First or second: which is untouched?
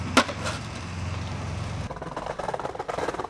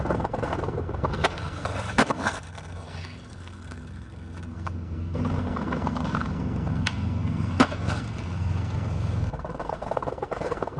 first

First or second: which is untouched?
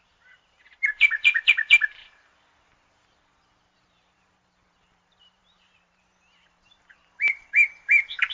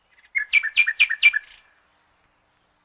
second